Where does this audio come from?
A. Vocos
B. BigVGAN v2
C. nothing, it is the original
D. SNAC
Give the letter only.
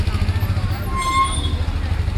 C